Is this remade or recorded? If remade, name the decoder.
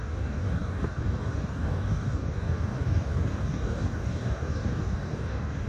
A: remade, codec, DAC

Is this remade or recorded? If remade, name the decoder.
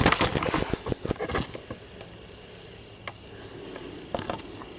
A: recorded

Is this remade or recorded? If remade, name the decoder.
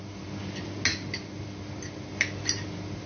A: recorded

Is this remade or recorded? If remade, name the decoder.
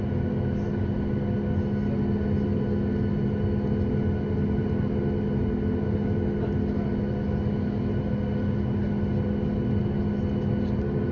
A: recorded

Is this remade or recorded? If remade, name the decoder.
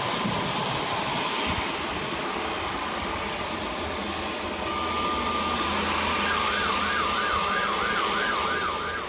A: recorded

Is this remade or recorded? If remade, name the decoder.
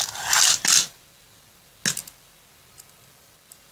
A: recorded